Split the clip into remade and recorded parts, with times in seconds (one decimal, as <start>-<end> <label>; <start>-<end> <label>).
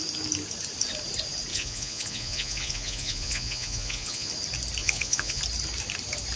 0.0-1.5 recorded; 1.5-4.3 remade; 4.3-4.8 recorded; 4.8-5.4 remade; 5.4-6.4 recorded